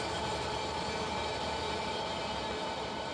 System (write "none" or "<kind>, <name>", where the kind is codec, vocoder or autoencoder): none